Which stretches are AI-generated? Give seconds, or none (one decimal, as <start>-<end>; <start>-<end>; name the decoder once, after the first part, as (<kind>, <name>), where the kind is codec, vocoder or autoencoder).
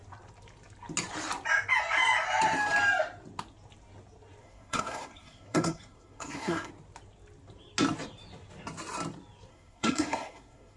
4.4-6.7 (codec, SNAC); 9.5-10.8